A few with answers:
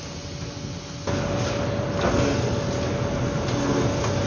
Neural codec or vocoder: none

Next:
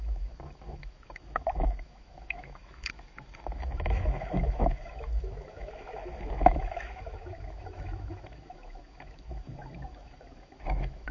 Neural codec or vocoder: autoencoder, DAC-VAE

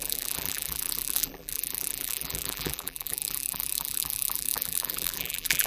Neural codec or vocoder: vocoder, BigVGAN v2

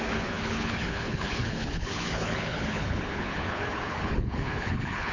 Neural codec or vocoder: codec, HILCodec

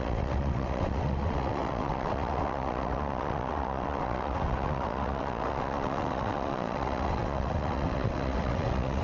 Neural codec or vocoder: vocoder, WaveNeXt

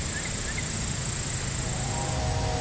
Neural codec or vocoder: none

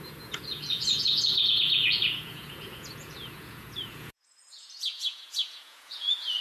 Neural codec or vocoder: vocoder, Vocos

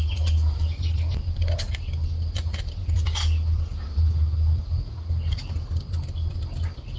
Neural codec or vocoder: none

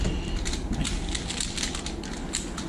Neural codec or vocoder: none